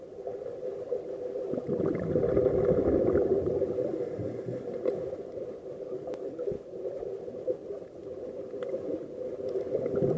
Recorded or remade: recorded